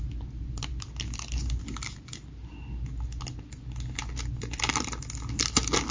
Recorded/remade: recorded